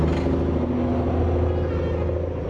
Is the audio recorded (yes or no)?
yes